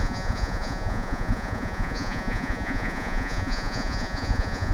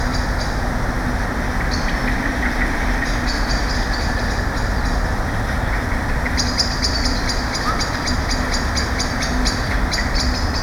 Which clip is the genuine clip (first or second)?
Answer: second